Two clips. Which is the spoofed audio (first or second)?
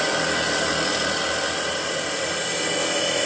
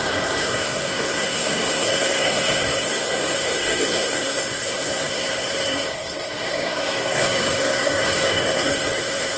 second